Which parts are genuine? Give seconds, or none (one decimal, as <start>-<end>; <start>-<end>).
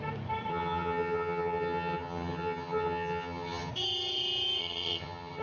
0.0-0.5; 3.7-4.6